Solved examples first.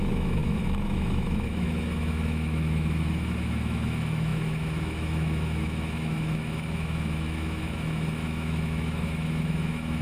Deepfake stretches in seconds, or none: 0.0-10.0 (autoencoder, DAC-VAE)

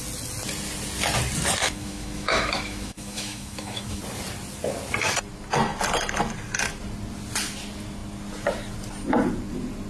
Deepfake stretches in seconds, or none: 1.6-4.0 (autoencoder, DAC-VAE)

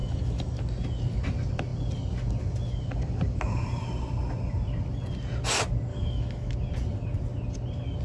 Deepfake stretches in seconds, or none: 0.0-0.6 (autoencoder, DAC-VAE); 5.9-6.5

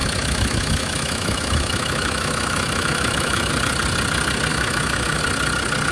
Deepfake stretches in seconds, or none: 0.0-3.5 (autoencoder, DAC-VAE); 4.5-5.2